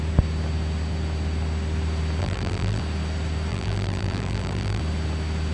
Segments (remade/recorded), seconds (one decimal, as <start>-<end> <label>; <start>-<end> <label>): 0.0-2.2 recorded; 2.2-2.8 remade; 2.8-3.5 recorded; 3.5-4.8 remade; 4.8-5.5 recorded